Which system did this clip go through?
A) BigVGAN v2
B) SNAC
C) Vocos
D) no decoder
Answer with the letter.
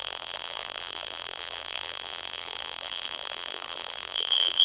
A